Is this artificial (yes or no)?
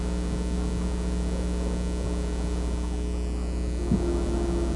no